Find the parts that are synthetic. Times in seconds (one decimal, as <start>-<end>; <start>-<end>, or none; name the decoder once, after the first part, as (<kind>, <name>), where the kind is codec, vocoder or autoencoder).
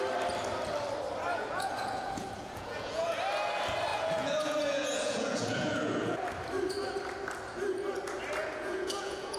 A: 1.3-3.2 (vocoder, Vocos); 3.9-6.3; 8.4-9.4